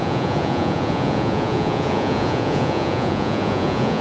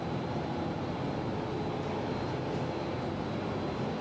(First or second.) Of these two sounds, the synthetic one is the first